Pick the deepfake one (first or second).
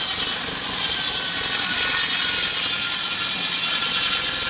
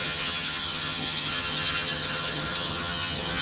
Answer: second